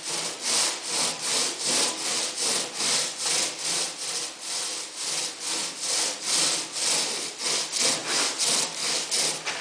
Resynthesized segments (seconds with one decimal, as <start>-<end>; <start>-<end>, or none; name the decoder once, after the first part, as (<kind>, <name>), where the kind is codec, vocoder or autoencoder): 0.0-1.3 (vocoder, BigVGAN v2); 2.6-8.0; 8.5-9.6